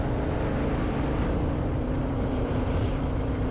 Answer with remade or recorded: recorded